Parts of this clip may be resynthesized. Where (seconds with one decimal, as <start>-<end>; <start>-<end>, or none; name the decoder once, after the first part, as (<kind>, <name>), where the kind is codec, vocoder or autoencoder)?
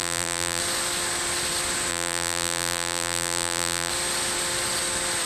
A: 0.0-0.6 (vocoder, BigVGAN v2); 1.9-3.9